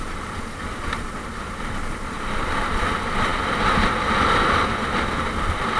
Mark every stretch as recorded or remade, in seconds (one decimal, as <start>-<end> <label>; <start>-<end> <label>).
0.0-5.8 recorded